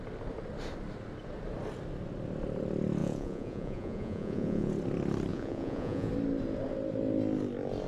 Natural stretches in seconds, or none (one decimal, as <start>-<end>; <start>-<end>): 0.0-3.0; 4.7-5.3; 6.1-7.9